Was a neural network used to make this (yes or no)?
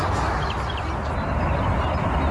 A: no